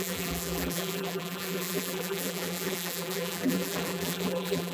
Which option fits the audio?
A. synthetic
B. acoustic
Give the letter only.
A